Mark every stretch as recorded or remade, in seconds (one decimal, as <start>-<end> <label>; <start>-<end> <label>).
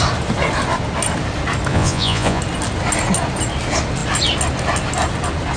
0.0-1.7 recorded; 1.7-2.4 remade; 2.4-5.6 recorded